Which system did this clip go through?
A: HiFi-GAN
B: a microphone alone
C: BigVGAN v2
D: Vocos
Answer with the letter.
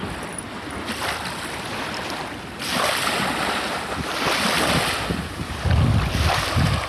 B